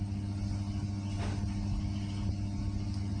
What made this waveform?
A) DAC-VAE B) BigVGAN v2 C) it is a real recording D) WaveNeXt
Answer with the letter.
C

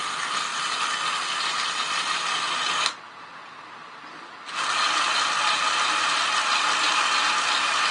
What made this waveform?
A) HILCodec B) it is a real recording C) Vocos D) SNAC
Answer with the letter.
B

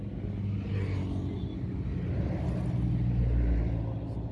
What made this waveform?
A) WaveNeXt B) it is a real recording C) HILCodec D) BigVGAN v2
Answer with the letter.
B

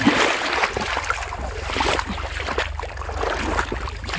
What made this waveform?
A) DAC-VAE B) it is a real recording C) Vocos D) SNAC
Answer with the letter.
B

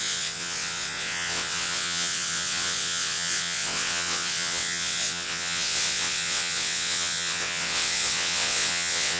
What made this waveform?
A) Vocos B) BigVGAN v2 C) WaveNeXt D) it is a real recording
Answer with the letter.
C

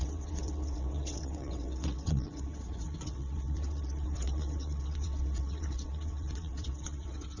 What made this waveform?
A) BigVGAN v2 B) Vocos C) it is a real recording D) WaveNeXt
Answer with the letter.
D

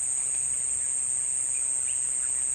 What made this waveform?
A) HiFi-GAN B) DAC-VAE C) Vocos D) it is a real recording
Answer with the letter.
D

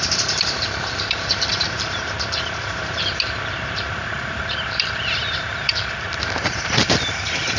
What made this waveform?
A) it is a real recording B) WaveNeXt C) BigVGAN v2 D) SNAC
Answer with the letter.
C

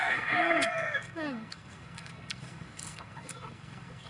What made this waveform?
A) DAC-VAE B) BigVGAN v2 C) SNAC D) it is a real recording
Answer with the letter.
C